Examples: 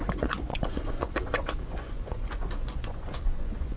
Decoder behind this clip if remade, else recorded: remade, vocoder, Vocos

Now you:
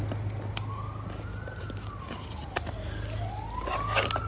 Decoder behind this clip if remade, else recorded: recorded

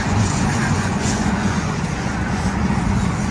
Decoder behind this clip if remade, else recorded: remade, vocoder, Vocos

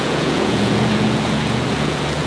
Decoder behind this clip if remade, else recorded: remade, vocoder, Vocos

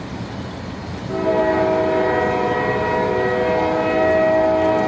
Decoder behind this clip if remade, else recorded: recorded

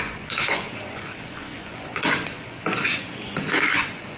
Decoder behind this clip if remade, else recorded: remade, vocoder, Vocos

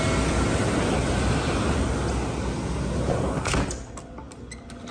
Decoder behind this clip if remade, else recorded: recorded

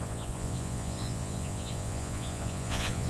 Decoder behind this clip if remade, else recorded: remade, vocoder, Vocos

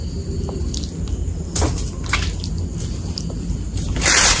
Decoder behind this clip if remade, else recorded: recorded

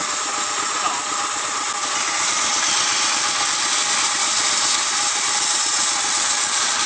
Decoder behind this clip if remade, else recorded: recorded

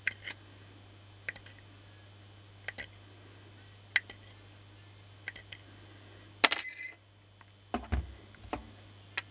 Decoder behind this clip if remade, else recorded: recorded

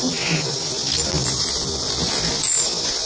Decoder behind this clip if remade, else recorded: recorded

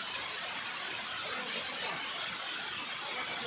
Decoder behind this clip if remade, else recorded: recorded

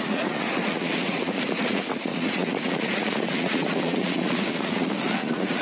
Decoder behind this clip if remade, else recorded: remade, vocoder, Vocos